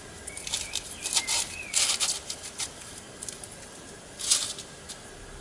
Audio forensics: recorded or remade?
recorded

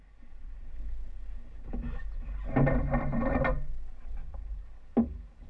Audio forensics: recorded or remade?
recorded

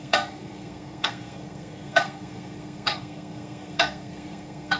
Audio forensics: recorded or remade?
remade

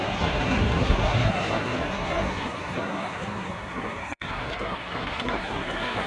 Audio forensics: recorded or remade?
remade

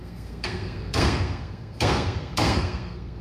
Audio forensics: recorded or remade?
remade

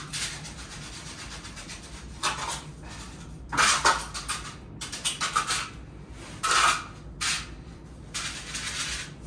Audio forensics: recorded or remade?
recorded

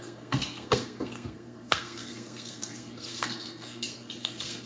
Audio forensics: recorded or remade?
remade